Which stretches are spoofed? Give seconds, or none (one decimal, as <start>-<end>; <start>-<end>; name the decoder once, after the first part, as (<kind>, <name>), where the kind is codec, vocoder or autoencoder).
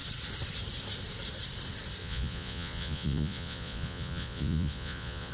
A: 2.0-5.3 (vocoder, Vocos)